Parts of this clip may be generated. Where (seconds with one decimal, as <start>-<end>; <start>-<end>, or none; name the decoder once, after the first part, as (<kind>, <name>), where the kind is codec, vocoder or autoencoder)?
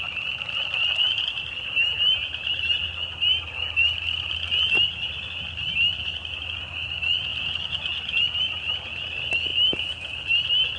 none